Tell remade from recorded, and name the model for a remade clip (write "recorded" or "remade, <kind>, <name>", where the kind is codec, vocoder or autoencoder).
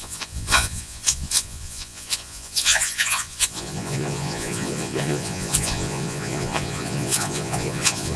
remade, vocoder, Vocos